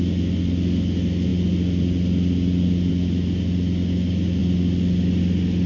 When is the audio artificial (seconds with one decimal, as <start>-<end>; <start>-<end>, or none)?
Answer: none